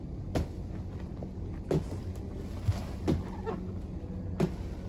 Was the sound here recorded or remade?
recorded